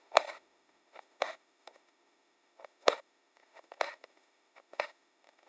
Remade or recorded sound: remade